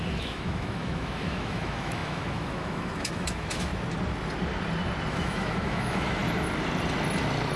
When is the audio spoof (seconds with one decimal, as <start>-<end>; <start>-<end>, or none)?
0.0-3.7; 5.1-6.2

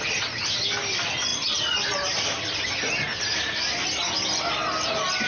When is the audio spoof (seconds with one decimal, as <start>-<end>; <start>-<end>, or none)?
none